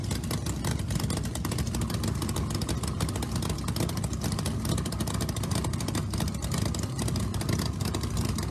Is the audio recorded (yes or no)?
yes